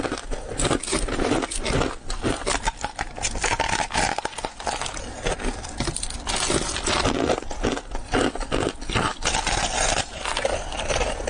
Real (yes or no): yes